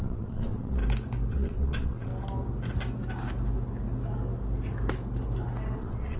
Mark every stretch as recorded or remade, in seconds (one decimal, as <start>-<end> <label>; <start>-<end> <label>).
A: 0.0-0.8 remade; 0.8-1.3 recorded; 1.3-2.1 remade; 2.1-5.8 recorded; 5.8-6.2 remade